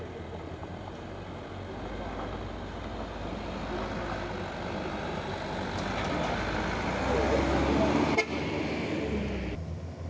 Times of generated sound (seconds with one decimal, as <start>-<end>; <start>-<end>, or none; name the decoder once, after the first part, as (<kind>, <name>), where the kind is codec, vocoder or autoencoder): 0.6-1.3 (vocoder, BigVGAN v2)